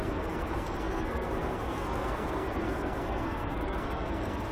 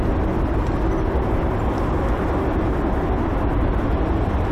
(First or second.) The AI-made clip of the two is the first